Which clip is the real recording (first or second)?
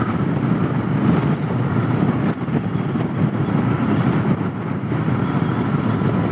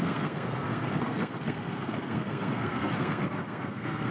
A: first